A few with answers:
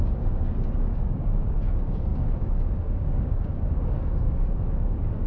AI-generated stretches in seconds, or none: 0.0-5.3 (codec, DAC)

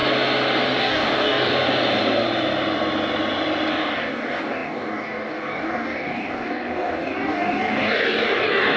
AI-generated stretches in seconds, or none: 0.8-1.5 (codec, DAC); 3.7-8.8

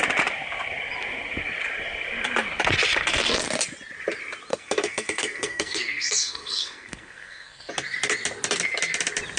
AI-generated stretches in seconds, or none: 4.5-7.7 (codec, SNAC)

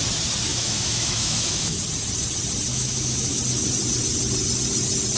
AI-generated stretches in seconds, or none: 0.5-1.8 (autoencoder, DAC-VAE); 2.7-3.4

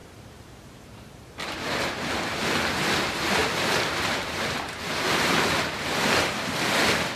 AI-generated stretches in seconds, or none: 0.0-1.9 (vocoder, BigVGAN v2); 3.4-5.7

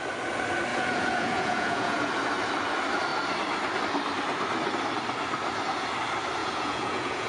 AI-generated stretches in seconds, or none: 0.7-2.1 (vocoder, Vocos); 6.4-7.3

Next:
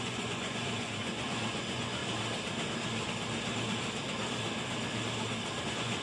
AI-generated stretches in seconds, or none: 0.0-2.0 (vocoder, Vocos); 5.6-6.0

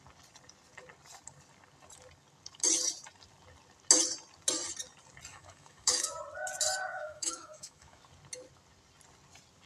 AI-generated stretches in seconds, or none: 5.3-6.2 (autoencoder, DAC-VAE); 6.9-8.0